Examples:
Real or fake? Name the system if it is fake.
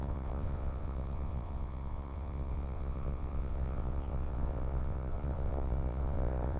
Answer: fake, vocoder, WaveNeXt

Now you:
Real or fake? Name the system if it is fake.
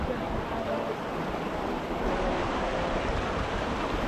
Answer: real